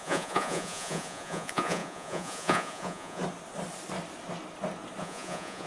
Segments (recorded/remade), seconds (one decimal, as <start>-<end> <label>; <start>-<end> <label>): 0.0-3.2 remade; 3.2-5.0 recorded; 5.0-5.7 remade